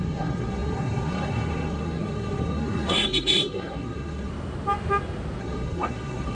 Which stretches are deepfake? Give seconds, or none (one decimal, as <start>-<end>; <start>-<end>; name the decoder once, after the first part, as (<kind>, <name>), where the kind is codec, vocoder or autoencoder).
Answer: 0.0-4.3 (codec, SNAC); 5.4-6.3